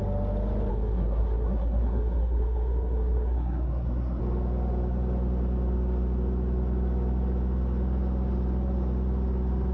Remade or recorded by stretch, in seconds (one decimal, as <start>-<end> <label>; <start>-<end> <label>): 0.0-0.7 recorded; 0.7-4.2 remade; 4.2-9.7 recorded